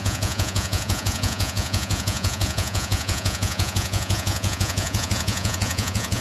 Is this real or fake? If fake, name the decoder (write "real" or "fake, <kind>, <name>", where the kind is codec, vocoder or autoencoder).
fake, vocoder, Vocos